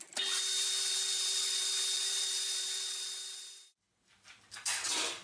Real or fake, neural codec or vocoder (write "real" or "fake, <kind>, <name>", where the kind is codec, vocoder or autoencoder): real